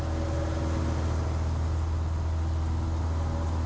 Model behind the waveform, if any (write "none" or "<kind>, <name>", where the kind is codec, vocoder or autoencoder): none